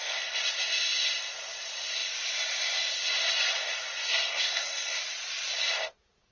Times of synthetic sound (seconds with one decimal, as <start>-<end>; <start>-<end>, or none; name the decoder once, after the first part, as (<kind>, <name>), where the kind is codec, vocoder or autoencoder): 4.0-5.0 (codec, SNAC)